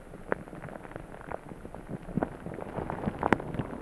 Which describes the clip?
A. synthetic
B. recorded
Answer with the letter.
B